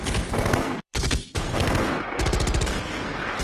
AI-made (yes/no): yes